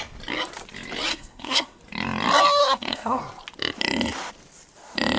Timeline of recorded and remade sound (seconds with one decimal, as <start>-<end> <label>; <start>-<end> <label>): 0.0-1.1 recorded; 1.1-1.8 remade; 1.8-2.6 recorded; 2.6-3.2 remade; 3.2-5.2 recorded